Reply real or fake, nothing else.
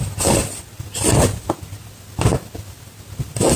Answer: real